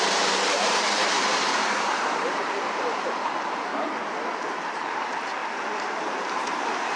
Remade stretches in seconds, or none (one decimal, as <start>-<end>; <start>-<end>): 0.0-1.5; 2.5-3.7; 4.3-7.0